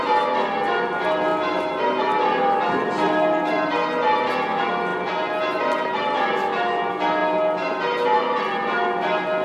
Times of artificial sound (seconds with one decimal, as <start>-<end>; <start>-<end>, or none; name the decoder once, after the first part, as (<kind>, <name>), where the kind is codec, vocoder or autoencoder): none